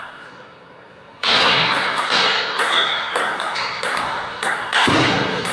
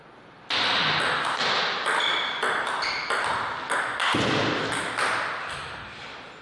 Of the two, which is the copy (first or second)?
first